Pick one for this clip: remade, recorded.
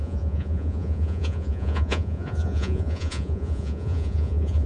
remade